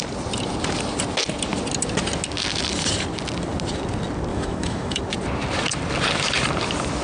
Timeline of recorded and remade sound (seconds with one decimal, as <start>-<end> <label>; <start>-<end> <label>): 0.0-4.3 recorded; 4.3-5.0 remade; 5.0-7.0 recorded